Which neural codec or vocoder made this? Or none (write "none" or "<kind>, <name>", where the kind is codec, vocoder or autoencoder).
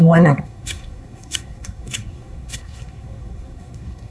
codec, SNAC